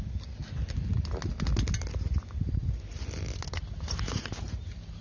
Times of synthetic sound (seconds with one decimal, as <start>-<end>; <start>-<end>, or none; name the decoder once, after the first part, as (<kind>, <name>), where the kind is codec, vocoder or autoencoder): none